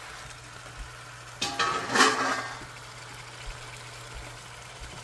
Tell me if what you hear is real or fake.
real